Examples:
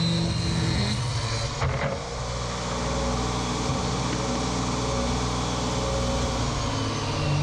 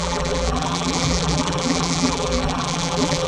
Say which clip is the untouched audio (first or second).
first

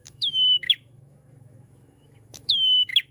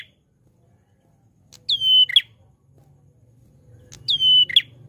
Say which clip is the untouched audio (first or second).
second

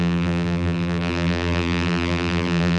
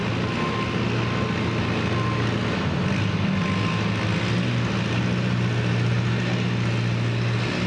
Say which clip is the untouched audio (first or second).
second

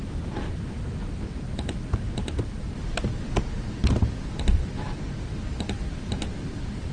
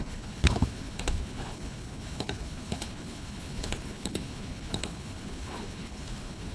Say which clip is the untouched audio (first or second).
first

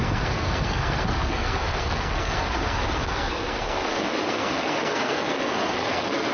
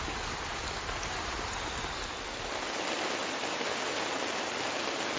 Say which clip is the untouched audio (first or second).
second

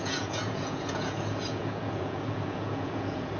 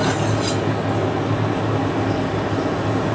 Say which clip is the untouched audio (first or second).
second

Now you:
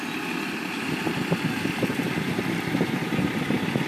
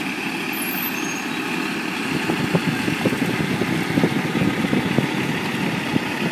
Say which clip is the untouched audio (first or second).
second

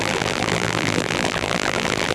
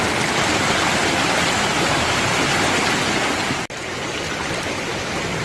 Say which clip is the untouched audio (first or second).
second